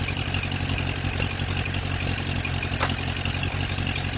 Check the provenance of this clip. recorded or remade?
recorded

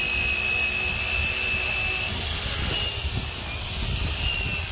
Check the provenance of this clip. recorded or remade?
recorded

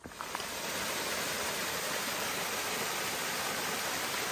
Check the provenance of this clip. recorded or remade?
recorded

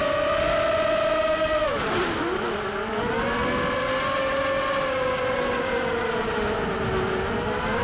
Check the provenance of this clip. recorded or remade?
recorded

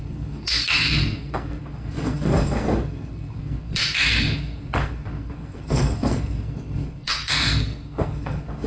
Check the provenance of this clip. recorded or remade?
remade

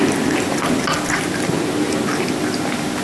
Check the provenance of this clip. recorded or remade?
recorded